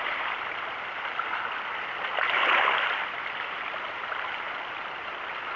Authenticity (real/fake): fake